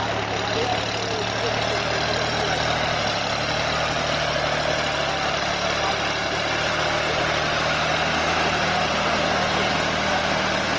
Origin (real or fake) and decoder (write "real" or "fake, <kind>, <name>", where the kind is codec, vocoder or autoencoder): real